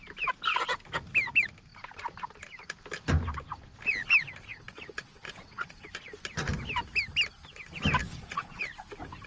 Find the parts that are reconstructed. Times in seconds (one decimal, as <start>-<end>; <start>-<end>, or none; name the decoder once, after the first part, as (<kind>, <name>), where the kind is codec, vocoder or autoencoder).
4.5-5.8 (vocoder, Vocos); 8.0-8.6